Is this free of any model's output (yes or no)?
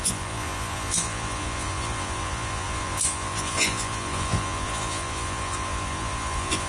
no